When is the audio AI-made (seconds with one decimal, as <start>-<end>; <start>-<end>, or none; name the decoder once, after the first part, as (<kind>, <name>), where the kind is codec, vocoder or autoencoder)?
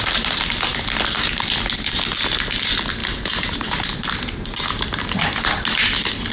3.0-4.1 (vocoder, BigVGAN v2)